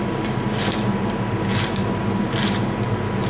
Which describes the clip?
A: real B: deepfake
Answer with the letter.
A